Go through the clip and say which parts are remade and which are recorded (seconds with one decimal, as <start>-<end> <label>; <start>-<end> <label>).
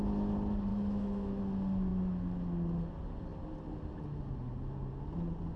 0.0-0.7 recorded; 0.7-1.4 remade; 1.4-5.6 recorded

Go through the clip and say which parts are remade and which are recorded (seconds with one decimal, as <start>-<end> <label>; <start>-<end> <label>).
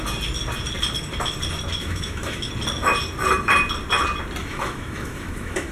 0.0-1.8 recorded; 1.8-2.5 remade; 2.5-4.4 recorded; 4.4-5.7 remade